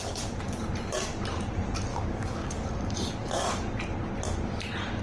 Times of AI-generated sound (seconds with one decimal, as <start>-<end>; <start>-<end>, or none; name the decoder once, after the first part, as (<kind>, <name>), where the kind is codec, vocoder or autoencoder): 1.9-3.5 (codec, DAC)